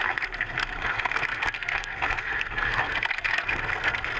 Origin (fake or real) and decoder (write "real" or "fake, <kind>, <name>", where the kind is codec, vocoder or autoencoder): fake, codec, SNAC